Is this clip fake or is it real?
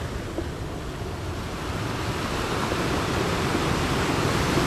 real